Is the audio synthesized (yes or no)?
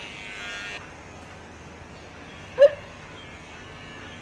no